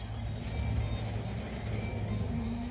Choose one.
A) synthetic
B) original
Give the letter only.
B